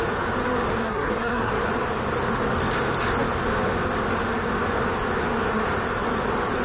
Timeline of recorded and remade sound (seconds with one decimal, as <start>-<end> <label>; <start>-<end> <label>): 0.0-0.8 recorded; 0.8-1.5 remade; 1.5-6.6 recorded